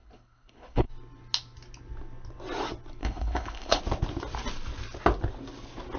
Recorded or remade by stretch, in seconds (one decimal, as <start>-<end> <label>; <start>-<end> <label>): 0.0-0.9 remade; 0.9-3.0 recorded; 3.0-3.8 remade; 3.8-6.0 recorded

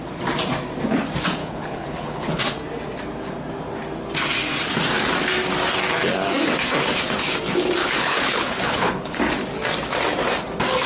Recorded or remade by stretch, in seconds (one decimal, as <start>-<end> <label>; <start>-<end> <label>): 0.0-1.4 recorded; 1.4-2.4 remade; 2.4-7.8 recorded; 7.8-9.2 remade; 9.2-10.9 recorded

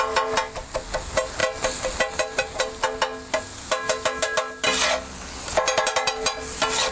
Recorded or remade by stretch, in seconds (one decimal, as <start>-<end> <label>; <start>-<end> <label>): 0.0-6.9 recorded

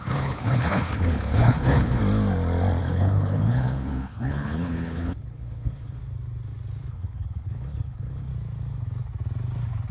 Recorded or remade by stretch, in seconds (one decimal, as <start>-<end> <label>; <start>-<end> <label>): 0.0-2.0 remade; 2.0-2.8 recorded; 2.8-6.0 remade; 6.0-6.9 recorded; 6.9-8.3 remade; 8.3-9.9 recorded

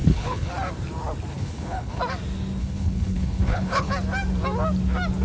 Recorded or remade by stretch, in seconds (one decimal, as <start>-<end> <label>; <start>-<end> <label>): 0.0-0.5 remade; 0.5-1.3 recorded; 1.3-2.0 remade; 2.0-2.6 recorded; 2.6-3.9 remade; 3.9-5.2 recorded

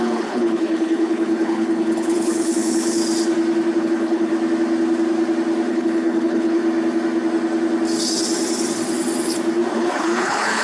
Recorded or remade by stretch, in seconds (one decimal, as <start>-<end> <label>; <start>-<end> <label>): 0.0-3.0 remade; 3.0-3.8 recorded; 3.8-4.3 remade; 4.3-5.7 recorded; 5.7-6.6 remade; 6.6-9.7 recorded; 9.7-10.6 remade

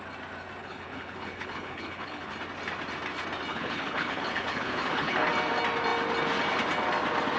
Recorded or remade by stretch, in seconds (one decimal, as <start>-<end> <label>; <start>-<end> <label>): 0.0-0.6 recorded; 0.6-2.3 remade; 2.3-3.5 recorded; 3.5-5.3 remade; 5.3-7.4 recorded

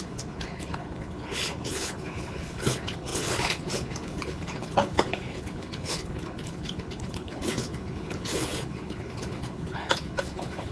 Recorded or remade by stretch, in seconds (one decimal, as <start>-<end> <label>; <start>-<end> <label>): 0.0-10.7 remade